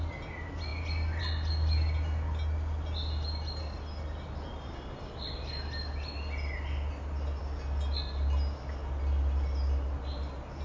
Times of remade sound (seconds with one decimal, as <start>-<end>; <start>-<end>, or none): none